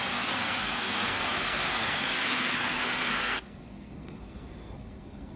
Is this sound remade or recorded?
remade